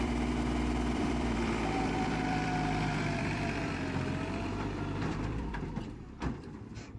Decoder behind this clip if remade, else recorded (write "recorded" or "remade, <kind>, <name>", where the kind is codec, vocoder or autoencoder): remade, vocoder, BigVGAN v2